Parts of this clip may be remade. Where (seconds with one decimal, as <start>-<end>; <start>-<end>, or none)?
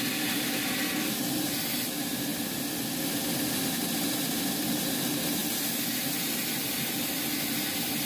0.0-5.4; 6.3-8.1